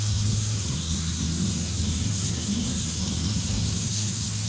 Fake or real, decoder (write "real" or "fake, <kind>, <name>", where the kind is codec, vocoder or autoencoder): fake, codec, SNAC